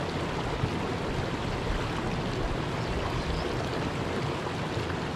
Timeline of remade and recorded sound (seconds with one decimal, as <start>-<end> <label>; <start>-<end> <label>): 0.0-5.2 recorded

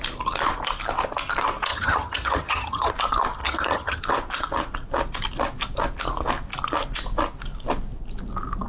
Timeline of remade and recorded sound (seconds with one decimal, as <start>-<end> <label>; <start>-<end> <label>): 0.0-1.7 recorded; 1.7-2.9 remade; 2.9-3.4 recorded; 3.4-4.0 remade; 4.0-8.7 recorded